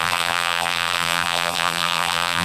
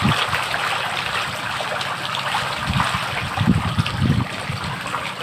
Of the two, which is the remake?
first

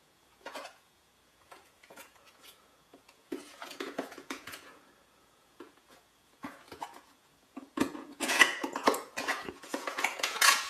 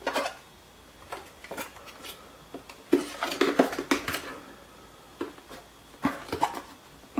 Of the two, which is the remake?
first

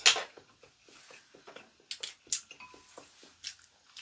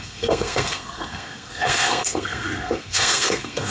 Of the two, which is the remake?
second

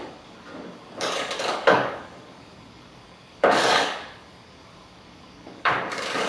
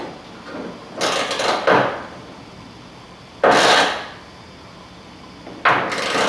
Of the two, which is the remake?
first